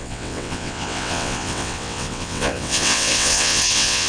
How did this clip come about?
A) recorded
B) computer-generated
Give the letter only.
B